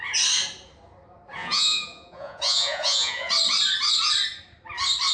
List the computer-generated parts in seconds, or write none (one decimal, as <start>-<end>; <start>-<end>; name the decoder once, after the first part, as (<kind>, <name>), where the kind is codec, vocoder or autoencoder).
1.4-3.3 (vocoder, Vocos)